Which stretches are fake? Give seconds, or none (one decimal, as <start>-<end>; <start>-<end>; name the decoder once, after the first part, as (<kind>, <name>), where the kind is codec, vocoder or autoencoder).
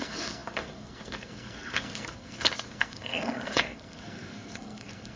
0.0-5.2 (codec, SNAC)